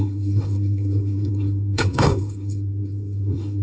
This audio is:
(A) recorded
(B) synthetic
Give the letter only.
B